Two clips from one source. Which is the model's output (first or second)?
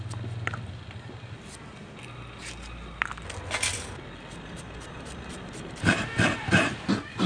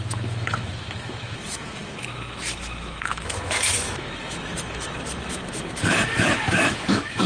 second